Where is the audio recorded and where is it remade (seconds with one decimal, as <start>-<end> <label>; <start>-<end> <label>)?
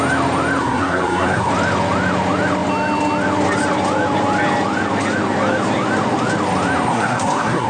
0.0-0.6 recorded; 0.6-1.5 remade; 1.5-6.9 recorded; 6.9-7.7 remade